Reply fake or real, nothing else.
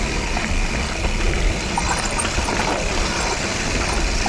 real